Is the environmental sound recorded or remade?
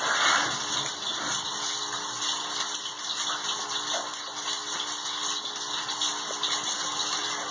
recorded